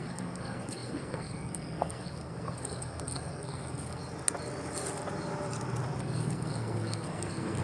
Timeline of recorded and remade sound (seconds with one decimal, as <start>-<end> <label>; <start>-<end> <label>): 0.0-4.0 remade; 4.0-6.0 recorded; 6.0-7.6 remade